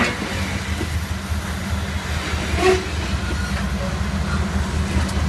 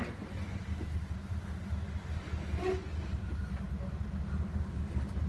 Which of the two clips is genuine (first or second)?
first